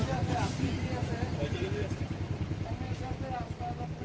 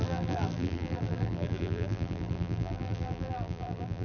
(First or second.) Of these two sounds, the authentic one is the first